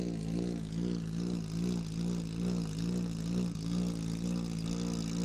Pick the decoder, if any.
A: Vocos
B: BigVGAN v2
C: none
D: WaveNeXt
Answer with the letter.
C